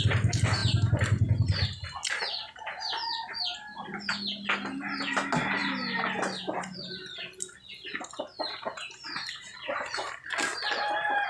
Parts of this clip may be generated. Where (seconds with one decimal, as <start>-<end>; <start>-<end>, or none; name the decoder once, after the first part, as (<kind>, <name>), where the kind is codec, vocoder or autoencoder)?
none